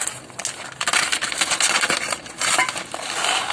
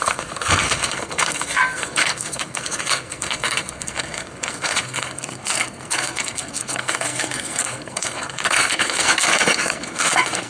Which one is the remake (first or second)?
second